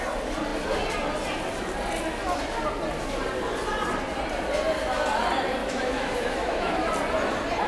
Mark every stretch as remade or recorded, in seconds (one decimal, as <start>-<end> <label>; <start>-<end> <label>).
0.0-5.6 recorded; 5.6-6.9 remade; 6.9-7.7 recorded